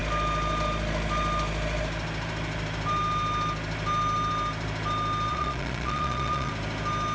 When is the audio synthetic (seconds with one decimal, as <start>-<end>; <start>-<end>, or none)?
5.3-6.5